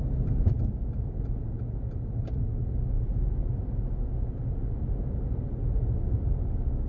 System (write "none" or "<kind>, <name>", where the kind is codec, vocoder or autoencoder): none